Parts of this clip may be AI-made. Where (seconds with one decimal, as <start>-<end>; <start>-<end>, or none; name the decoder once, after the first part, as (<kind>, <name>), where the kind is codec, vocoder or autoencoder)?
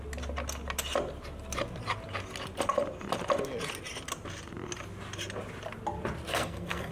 6.3-6.9 (codec, SNAC)